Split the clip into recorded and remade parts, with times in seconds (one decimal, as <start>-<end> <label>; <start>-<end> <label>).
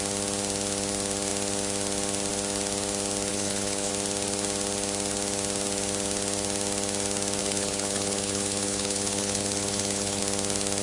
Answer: 0.0-3.3 recorded; 3.3-3.9 remade; 3.9-7.4 recorded; 7.4-10.2 remade; 10.2-10.8 recorded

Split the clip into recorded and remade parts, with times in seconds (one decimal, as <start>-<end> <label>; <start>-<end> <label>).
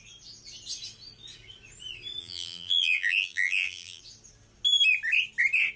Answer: 0.0-2.2 recorded; 2.2-4.0 remade; 4.0-5.8 recorded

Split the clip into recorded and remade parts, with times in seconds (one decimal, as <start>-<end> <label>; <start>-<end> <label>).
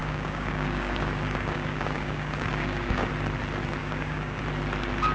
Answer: 0.0-3.1 remade; 3.1-3.8 recorded; 3.8-4.4 remade; 4.4-5.1 recorded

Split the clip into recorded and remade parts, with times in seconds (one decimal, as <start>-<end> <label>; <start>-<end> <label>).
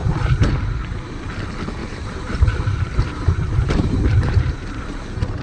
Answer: 0.0-0.6 remade; 0.6-1.8 recorded; 1.8-5.0 remade; 5.0-5.4 recorded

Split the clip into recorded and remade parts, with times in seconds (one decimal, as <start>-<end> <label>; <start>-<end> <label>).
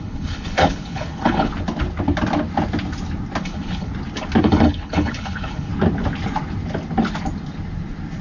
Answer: 0.0-1.5 remade; 1.5-3.4 recorded; 3.4-3.9 remade; 3.9-4.4 recorded; 4.4-5.7 remade; 5.7-8.2 recorded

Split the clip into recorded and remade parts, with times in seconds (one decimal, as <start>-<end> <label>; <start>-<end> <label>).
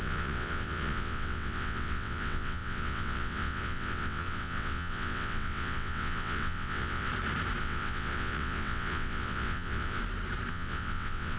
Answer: 0.0-7.1 remade; 7.1-7.6 recorded; 7.6-10.0 remade; 10.0-10.5 recorded; 10.5-11.4 remade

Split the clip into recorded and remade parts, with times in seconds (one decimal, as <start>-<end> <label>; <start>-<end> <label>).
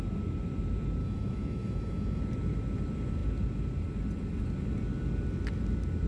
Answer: 0.0-1.0 recorded; 1.0-2.2 remade; 2.2-6.1 recorded